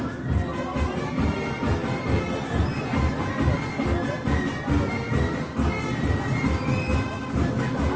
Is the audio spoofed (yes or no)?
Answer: no